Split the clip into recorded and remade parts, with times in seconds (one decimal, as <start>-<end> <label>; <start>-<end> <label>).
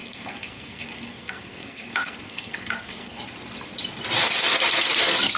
0.0-3.2 remade; 3.2-5.4 recorded